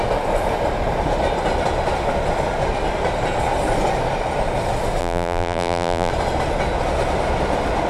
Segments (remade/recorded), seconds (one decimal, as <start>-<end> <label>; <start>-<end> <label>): 0.0-5.0 recorded; 5.0-6.1 remade; 6.1-7.9 recorded